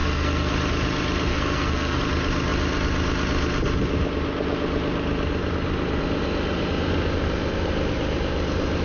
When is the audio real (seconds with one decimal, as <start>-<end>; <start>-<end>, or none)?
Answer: 0.5-1.3; 2.0-8.8

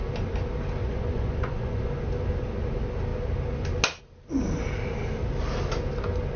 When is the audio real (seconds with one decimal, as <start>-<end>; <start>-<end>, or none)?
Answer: 0.0-0.8; 1.9-6.4

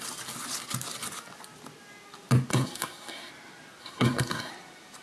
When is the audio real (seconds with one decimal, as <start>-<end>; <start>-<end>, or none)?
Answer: 0.0-2.5; 3.3-3.8; 4.5-5.0

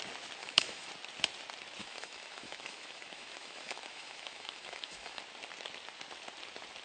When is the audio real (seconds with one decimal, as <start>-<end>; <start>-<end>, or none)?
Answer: 0.0-0.4; 0.9-1.8; 5.2-6.8

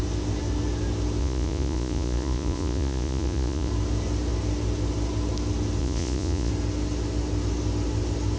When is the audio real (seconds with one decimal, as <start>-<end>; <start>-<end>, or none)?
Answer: 0.0-1.2; 3.7-5.8; 6.5-8.4

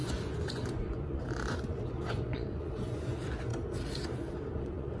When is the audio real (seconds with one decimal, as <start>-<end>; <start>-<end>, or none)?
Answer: 3.5-4.5

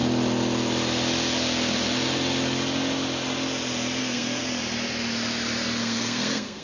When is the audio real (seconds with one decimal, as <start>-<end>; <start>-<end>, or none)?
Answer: 0.0-4.0; 4.4-5.8

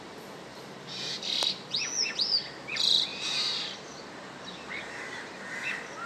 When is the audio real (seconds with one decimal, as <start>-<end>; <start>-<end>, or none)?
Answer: 0.0-0.5; 1.2-3.1; 5.3-6.1